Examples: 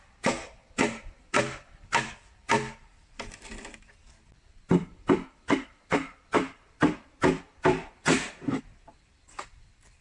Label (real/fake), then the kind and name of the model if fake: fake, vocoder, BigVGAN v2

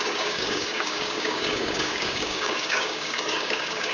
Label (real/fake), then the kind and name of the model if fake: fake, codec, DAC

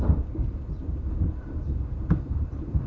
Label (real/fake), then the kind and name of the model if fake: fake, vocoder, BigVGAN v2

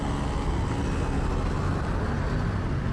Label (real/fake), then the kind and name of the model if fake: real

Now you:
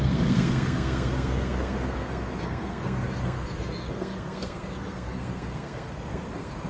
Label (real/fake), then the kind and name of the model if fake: fake, codec, SNAC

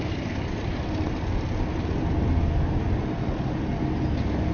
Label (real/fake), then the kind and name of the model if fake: real